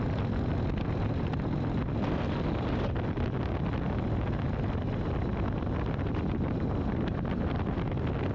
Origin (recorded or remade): recorded